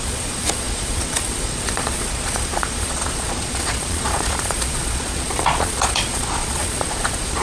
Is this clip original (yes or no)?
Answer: no